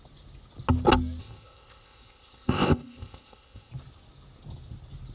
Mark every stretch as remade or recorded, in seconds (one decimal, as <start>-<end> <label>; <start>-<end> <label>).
0.0-1.2 recorded; 1.2-3.7 remade; 3.7-5.1 recorded

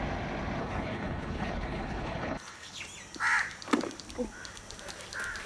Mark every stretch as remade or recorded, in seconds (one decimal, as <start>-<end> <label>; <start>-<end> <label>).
0.0-0.6 recorded; 0.6-2.8 remade; 2.8-5.5 recorded